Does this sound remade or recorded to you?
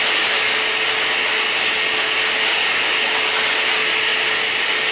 recorded